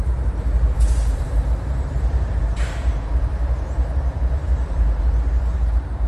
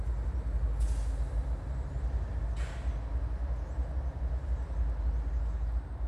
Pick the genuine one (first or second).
second